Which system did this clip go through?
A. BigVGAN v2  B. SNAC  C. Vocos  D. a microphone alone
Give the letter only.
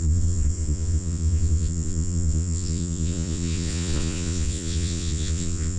C